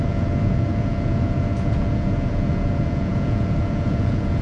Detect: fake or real fake